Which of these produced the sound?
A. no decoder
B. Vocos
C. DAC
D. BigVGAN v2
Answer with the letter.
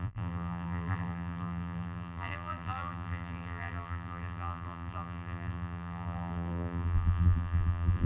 D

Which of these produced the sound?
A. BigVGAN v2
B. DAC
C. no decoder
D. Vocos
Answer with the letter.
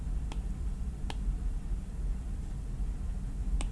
C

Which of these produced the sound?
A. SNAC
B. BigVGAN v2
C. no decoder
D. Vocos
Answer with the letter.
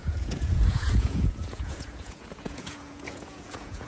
D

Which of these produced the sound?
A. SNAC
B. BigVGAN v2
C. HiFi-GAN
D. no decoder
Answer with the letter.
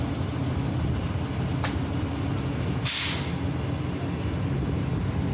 D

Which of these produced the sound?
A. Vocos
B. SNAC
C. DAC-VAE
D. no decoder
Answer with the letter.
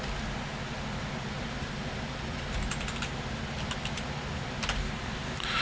D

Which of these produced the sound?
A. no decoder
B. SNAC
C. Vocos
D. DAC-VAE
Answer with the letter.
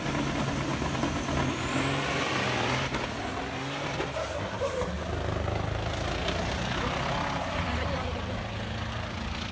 A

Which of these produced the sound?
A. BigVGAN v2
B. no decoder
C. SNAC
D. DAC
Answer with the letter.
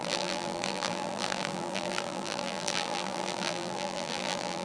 A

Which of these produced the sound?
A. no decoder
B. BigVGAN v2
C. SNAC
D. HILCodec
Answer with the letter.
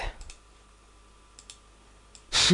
A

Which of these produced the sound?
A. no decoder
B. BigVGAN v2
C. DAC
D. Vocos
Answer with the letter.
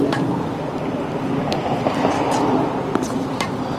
B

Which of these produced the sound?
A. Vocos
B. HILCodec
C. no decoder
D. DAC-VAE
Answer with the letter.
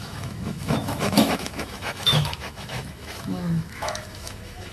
D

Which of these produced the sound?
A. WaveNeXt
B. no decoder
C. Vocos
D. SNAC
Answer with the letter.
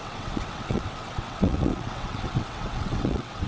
A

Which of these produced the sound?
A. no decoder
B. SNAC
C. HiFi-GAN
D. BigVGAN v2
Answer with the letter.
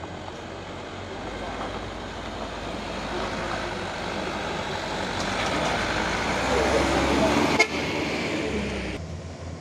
A